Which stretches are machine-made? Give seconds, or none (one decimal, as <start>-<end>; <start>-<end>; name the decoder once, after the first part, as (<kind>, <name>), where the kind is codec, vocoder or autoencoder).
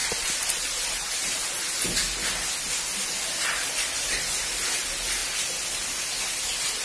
none